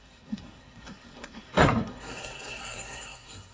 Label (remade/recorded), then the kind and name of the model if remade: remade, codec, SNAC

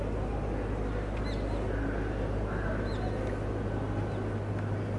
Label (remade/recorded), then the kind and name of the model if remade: recorded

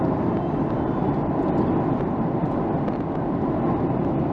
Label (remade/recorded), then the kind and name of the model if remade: recorded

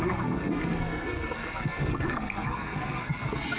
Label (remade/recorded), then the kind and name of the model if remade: remade, codec, SNAC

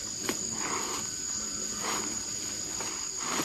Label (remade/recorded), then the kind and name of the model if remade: recorded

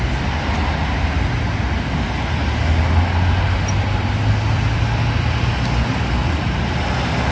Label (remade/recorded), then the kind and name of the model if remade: recorded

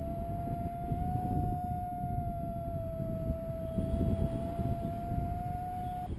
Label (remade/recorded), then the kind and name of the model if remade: recorded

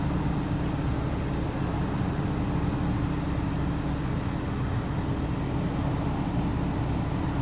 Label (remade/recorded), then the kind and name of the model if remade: recorded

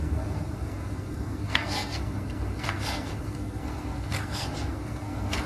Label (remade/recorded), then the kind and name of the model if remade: remade, codec, SNAC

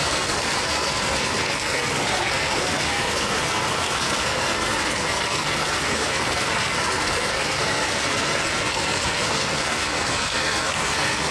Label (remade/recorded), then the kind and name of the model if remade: remade, codec, SNAC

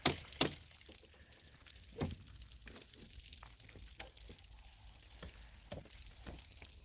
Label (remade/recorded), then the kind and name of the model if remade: recorded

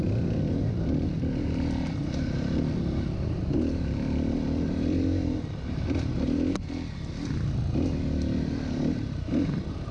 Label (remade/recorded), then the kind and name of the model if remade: recorded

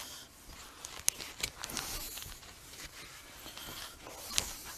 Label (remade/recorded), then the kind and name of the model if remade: recorded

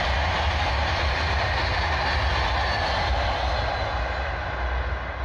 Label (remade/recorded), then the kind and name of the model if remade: recorded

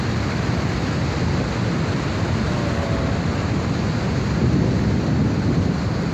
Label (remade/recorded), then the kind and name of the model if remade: recorded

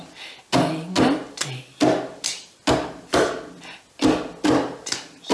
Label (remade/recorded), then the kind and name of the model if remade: recorded